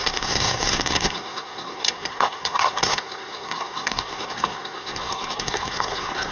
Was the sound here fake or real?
fake